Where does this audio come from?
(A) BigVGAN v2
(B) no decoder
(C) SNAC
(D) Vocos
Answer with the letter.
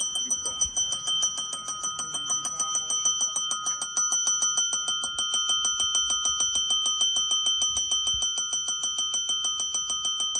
B